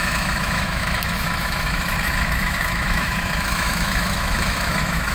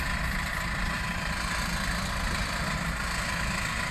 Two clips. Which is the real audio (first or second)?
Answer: second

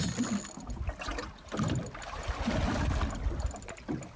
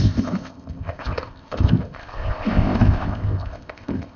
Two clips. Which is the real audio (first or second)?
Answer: first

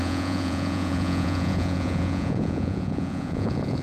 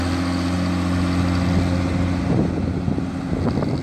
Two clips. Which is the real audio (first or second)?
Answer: second